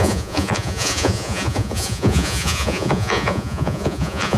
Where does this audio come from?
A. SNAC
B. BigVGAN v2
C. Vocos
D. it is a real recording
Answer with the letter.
C